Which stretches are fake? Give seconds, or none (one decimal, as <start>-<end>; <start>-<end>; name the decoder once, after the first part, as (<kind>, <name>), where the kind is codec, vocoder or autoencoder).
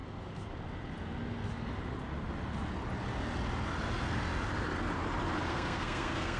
5.5-6.4 (codec, SNAC)